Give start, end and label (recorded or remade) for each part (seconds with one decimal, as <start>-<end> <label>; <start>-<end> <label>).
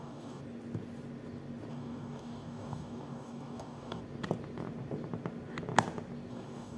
0.0-0.4 remade; 0.4-1.7 recorded; 1.7-4.0 remade; 4.0-6.3 recorded; 6.3-6.8 remade